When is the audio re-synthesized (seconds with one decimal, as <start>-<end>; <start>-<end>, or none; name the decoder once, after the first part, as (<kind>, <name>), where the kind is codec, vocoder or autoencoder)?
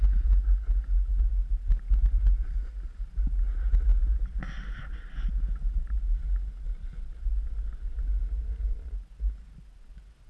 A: none